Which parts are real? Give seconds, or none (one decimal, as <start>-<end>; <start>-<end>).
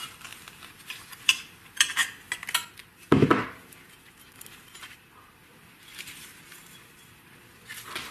2.0-5.6